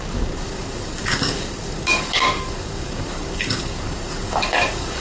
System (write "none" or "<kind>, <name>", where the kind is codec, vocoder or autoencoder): codec, DAC